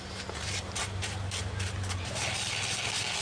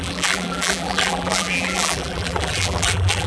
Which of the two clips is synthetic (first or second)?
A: second